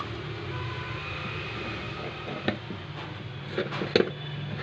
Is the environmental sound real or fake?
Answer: real